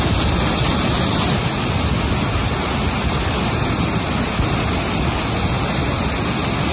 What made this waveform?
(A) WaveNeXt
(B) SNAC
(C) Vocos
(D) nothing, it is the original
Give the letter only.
D